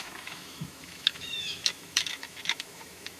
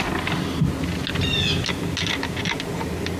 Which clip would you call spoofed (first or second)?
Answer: first